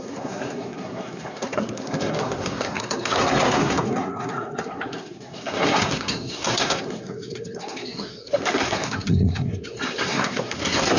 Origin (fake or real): fake